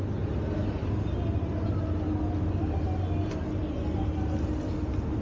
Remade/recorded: recorded